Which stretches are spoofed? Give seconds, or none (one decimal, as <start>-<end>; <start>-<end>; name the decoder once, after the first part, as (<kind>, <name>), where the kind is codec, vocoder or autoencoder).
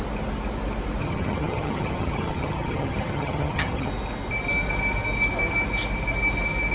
1.0-3.9 (vocoder, HiFi-GAN)